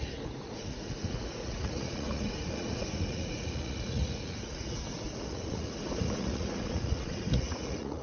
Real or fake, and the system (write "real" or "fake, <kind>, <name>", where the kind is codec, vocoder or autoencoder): fake, vocoder, Vocos